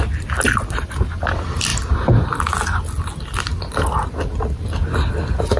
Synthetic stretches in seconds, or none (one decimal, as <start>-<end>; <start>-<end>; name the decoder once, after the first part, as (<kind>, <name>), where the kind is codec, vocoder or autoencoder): none